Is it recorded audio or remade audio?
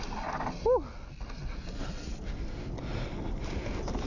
recorded